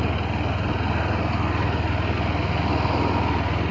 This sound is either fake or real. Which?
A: real